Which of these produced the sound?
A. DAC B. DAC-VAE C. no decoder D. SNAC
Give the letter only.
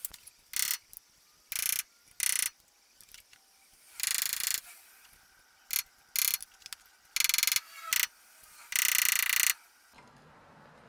C